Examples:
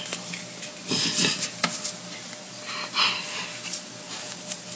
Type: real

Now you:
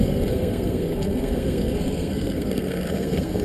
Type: fake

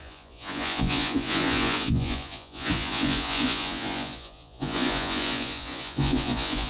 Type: fake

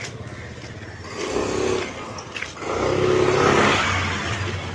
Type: real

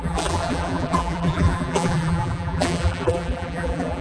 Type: fake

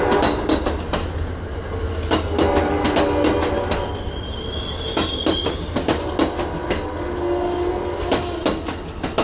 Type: real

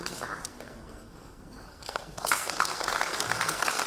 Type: fake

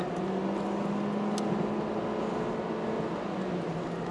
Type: real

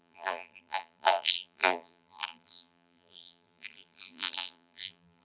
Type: fake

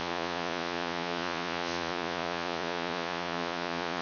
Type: fake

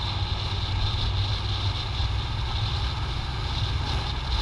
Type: real